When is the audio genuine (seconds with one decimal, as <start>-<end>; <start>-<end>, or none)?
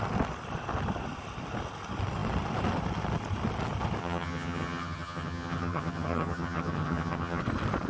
0.0-4.0; 7.4-7.9